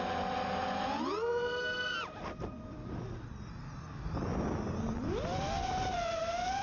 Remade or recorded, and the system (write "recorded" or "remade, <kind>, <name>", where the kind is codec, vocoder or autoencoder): recorded